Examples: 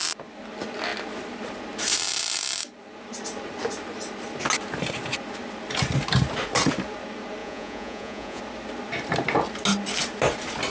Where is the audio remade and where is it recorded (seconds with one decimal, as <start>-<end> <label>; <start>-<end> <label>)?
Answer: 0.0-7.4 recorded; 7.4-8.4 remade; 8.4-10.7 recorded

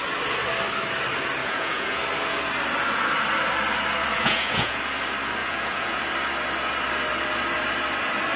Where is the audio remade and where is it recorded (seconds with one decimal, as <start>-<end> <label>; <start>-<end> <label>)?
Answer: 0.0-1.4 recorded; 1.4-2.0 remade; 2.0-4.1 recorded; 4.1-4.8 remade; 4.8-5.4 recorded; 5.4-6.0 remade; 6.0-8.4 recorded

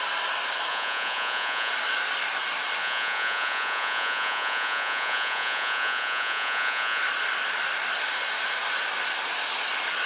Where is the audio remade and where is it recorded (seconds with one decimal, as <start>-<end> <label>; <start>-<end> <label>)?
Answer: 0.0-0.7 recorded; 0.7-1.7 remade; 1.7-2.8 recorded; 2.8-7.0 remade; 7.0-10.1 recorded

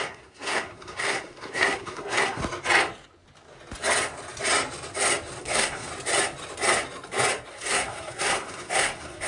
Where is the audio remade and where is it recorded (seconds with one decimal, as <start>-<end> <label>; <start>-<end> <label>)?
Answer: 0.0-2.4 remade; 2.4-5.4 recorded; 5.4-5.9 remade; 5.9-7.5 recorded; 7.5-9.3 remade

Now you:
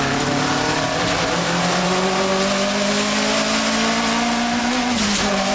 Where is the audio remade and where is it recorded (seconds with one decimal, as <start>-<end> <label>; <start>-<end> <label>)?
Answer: 0.0-2.3 remade; 2.3-4.6 recorded; 4.6-5.5 remade

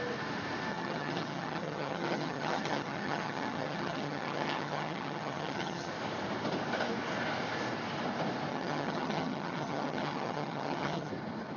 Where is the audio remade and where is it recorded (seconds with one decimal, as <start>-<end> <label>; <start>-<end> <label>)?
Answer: 0.0-0.7 recorded; 0.7-5.9 remade; 5.9-8.5 recorded; 8.5-11.1 remade; 11.1-11.6 recorded